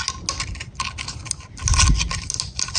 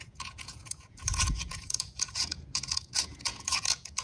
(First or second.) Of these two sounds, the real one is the first